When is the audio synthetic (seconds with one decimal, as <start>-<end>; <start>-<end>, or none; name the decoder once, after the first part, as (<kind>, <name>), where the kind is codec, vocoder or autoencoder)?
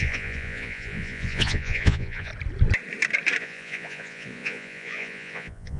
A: 0.0-2.3 (vocoder, Vocos); 3.4-5.8